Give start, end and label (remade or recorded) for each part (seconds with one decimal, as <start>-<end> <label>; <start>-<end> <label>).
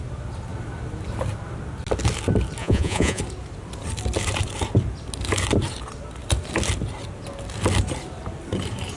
0.0-2.6 recorded; 2.6-3.2 remade; 3.2-9.0 recorded